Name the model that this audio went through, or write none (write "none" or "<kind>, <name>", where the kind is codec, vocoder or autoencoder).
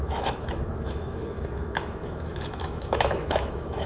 autoencoder, DAC-VAE